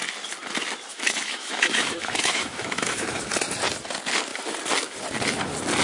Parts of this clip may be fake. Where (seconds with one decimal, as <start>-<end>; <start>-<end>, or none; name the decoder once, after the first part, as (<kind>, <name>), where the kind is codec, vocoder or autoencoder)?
0.9-3.3 (autoencoder, DAC-VAE)